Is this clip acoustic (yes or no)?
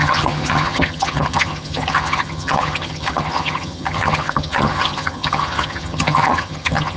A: no